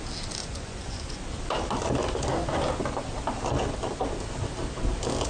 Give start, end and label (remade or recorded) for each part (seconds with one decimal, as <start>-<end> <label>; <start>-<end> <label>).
0.0-0.4 recorded; 0.4-1.2 remade; 1.2-5.3 recorded